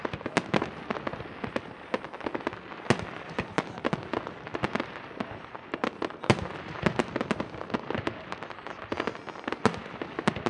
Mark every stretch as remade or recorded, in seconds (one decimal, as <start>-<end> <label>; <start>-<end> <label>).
0.0-10.5 recorded